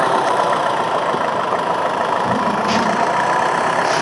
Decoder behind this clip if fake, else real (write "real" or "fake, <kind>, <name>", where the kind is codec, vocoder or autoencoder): fake, vocoder, BigVGAN v2